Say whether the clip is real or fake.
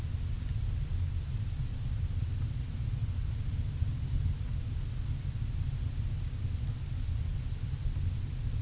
real